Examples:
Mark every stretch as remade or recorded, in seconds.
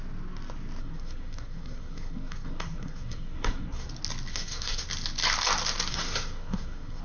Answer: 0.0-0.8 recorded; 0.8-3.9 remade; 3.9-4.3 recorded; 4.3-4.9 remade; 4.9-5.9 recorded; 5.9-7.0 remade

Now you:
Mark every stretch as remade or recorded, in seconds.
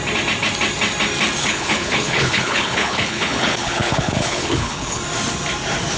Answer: 0.0-1.4 recorded; 1.4-5.0 remade; 5.0-6.0 recorded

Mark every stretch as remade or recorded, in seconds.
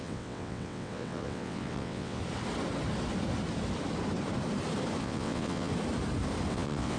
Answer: 0.0-2.2 remade; 2.2-5.0 recorded; 5.0-5.7 remade; 5.7-6.5 recorded; 6.5-7.0 remade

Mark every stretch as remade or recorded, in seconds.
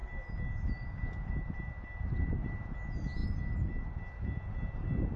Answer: 0.0-5.2 recorded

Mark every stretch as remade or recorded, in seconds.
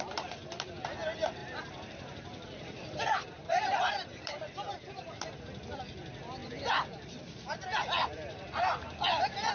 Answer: 0.0-1.4 recorded; 1.4-5.4 remade; 5.4-6.4 recorded; 6.4-9.5 remade